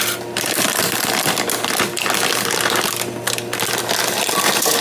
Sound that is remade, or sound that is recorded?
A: recorded